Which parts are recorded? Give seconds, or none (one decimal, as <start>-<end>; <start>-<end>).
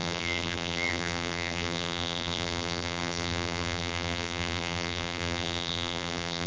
none